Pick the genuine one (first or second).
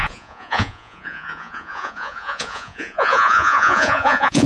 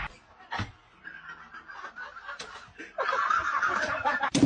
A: second